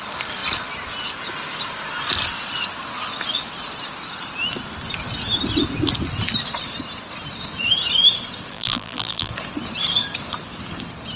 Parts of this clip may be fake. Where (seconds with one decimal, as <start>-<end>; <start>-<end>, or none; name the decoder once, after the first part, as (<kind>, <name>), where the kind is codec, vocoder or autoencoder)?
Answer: 8.5-9.3 (vocoder, BigVGAN v2)

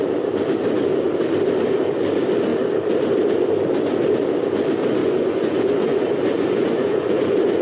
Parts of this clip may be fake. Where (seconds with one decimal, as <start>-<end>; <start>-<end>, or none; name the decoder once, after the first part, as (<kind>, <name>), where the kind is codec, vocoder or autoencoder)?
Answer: 5.0-7.6 (vocoder, Vocos)

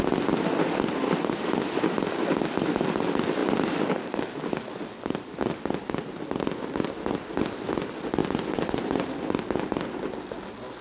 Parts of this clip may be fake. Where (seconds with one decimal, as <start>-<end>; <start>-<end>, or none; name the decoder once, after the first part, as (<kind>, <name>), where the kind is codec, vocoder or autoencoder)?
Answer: 0.0-3.4 (vocoder, BigVGAN v2); 4.5-10.8

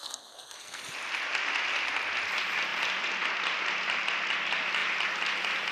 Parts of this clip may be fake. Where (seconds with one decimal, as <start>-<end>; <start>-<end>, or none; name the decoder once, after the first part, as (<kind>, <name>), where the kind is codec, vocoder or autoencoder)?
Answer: 0.0-0.8 (codec, SNAC)

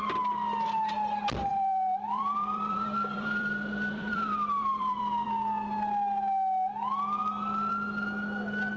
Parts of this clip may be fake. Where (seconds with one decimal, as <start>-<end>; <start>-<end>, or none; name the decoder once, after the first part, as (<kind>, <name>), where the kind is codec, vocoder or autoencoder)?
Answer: 1.5-5.3 (vocoder, BigVGAN v2)

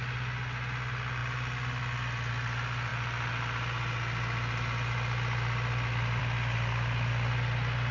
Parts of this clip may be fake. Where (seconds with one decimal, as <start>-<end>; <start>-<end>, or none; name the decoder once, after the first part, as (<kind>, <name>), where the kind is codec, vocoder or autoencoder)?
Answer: none